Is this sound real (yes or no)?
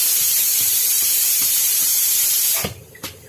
no